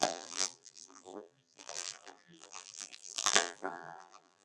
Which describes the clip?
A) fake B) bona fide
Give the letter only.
A